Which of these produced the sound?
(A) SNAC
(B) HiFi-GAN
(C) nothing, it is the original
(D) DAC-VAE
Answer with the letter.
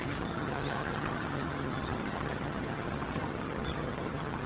B